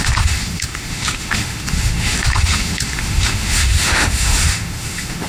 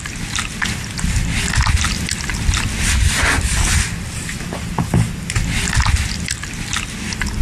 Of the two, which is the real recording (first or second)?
second